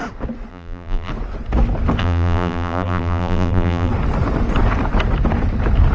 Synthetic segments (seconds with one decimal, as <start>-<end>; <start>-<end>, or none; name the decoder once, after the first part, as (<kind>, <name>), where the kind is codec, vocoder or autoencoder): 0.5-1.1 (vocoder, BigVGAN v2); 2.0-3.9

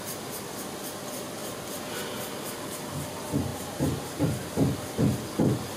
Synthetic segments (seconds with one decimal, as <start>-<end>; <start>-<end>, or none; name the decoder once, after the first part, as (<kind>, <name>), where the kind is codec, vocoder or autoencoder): 1.4-1.9 (vocoder, BigVGAN v2); 3.5-4.5

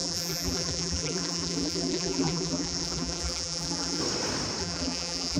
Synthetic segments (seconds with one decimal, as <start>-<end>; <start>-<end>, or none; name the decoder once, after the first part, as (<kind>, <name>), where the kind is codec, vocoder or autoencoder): 0.0-4.0 (vocoder, BigVGAN v2); 4.6-5.4

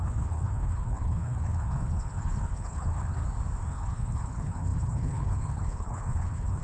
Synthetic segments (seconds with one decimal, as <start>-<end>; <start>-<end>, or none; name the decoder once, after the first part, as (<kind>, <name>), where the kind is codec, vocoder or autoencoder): 0.0-3.2 (codec, HILCodec); 3.7-6.6